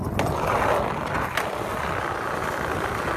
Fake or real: real